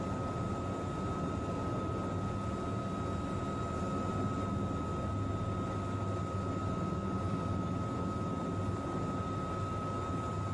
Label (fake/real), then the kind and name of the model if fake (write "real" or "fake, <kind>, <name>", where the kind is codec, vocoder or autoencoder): real